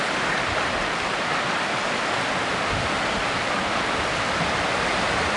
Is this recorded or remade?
recorded